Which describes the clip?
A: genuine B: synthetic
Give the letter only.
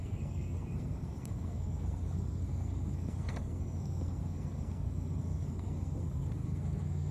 B